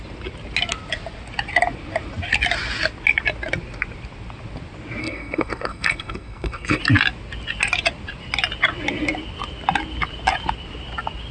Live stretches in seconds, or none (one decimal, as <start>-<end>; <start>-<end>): 0.0-5.0; 6.8-11.3